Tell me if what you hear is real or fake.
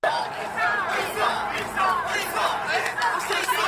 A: real